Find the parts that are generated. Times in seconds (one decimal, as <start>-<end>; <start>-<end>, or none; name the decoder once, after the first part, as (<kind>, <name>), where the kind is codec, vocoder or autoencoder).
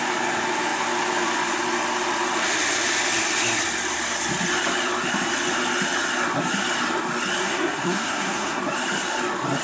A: 7.4-8.6 (codec, SNAC)